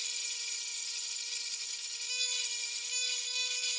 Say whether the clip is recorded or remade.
recorded